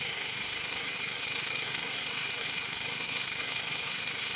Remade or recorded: remade